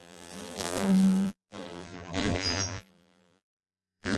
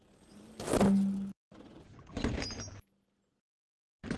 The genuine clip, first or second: second